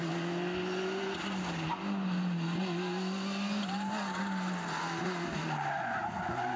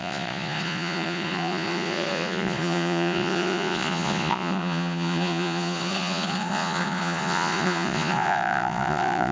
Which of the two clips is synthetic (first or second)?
second